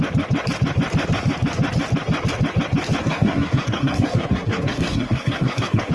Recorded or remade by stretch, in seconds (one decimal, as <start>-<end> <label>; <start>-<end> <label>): 0.0-3.0 recorded; 3.0-5.9 remade